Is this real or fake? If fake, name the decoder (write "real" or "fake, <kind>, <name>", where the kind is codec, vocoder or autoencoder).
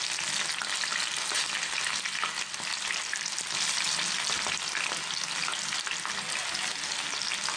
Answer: real